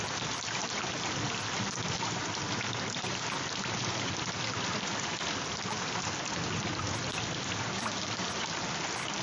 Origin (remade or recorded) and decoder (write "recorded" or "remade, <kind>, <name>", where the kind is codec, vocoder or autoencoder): recorded